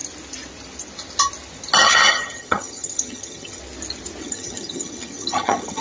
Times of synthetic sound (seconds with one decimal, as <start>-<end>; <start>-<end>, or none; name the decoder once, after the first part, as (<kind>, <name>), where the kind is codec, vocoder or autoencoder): 1.8-3.6 (vocoder, HiFi-GAN); 4.2-5.8